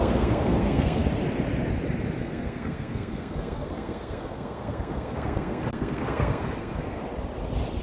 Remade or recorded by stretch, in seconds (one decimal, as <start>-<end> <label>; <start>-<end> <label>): 0.0-1.1 remade; 1.1-2.2 recorded; 2.2-7.0 remade; 7.0-7.8 recorded